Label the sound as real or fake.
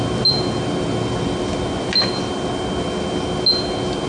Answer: real